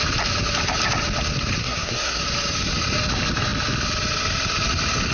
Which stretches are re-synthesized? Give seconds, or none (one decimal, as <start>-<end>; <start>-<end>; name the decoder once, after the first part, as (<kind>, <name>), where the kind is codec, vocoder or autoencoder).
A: 1.6-2.2 (codec, SNAC)